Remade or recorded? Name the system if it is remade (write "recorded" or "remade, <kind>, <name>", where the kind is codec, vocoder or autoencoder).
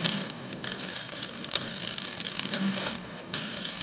remade, codec, DAC